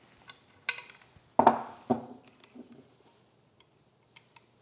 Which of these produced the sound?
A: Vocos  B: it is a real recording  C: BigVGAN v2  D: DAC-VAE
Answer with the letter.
B